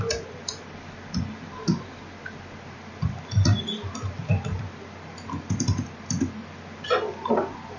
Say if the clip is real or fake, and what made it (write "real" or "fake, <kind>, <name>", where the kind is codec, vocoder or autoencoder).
real